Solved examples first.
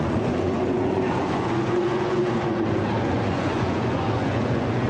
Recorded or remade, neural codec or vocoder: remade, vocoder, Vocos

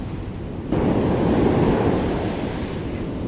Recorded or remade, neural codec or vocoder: recorded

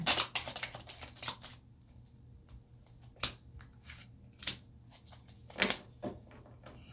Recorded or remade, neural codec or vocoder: recorded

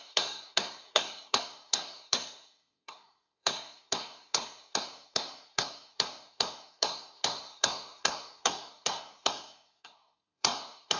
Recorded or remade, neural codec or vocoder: remade, codec, SNAC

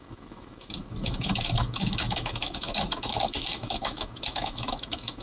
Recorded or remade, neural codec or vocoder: remade, autoencoder, DAC-VAE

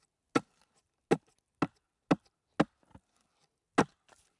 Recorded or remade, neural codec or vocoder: recorded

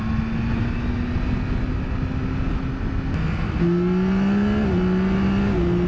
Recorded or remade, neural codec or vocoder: recorded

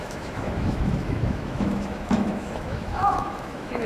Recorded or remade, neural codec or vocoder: remade, autoencoder, DAC-VAE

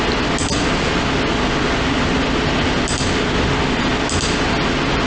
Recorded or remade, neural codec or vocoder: recorded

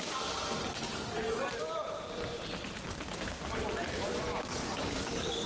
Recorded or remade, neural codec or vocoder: remade, vocoder, BigVGAN v2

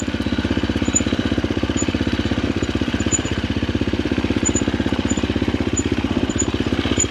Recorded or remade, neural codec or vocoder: remade, vocoder, BigVGAN v2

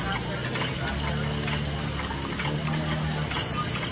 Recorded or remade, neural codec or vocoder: recorded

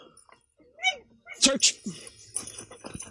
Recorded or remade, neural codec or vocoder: recorded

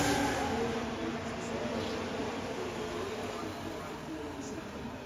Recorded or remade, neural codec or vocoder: recorded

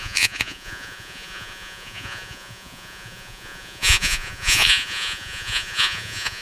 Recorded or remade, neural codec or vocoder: remade, vocoder, Vocos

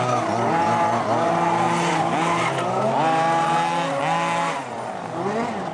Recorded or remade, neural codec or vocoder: recorded